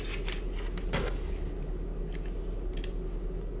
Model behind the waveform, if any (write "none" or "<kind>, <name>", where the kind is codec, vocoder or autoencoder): none